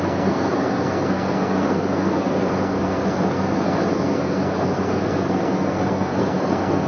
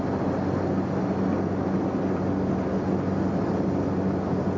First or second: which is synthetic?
first